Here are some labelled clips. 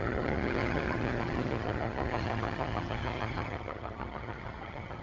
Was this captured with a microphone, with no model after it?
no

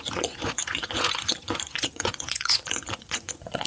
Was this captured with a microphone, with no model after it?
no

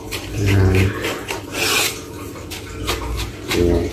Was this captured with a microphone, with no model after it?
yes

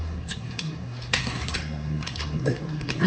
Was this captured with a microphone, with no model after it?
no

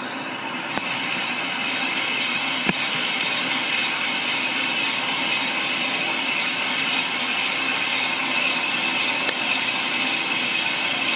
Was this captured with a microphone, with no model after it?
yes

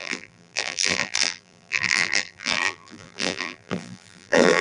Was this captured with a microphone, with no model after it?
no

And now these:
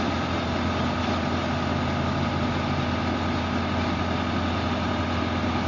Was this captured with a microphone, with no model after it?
yes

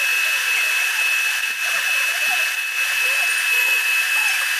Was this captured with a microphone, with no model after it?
yes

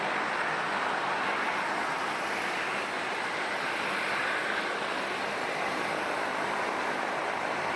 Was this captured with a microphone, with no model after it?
yes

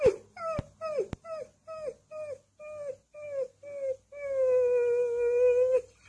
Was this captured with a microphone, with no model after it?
yes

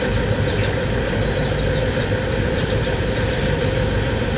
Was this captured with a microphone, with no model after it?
no